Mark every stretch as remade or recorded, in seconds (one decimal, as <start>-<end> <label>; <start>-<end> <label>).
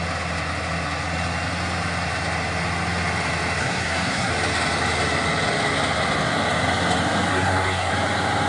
0.0-3.6 recorded; 3.6-4.3 remade; 4.3-7.3 recorded; 7.3-7.9 remade; 7.9-8.5 recorded